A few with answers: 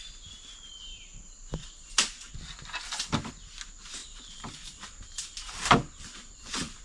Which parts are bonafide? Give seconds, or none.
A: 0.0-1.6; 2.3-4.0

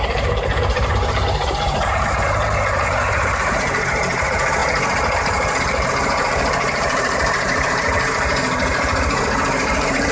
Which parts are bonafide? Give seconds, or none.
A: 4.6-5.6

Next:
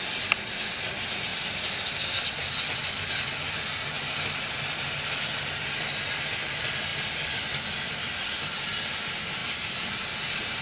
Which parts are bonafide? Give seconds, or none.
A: 0.0-1.3; 2.2-6.9; 7.6-9.4

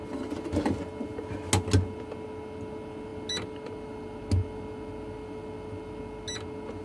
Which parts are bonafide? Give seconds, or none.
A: 0.0-6.8

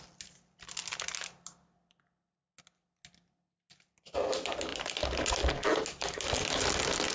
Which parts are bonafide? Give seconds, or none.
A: 0.0-4.7; 5.3-7.1

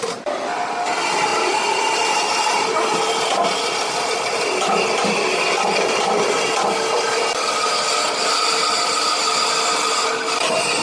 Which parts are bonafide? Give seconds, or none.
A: 0.0-1.3; 3.1-10.8